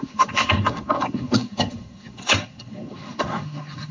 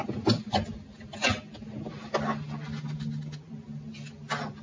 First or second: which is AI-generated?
first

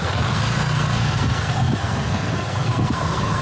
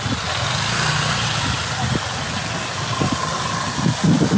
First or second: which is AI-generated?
first